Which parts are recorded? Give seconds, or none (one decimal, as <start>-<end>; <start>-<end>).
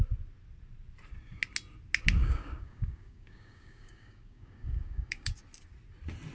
0.0-2.2; 5.3-6.3